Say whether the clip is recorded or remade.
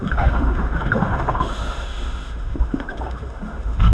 remade